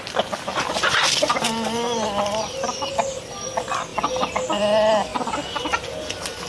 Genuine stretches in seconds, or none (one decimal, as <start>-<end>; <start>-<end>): 0.0-0.5; 2.9-3.9; 4.6-5.1